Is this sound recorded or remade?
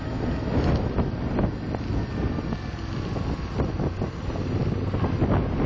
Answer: recorded